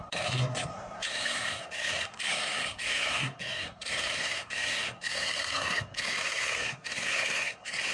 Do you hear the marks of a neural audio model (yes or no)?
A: yes